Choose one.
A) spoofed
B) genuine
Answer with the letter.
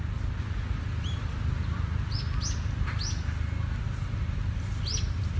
B